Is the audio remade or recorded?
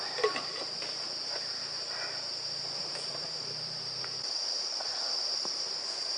remade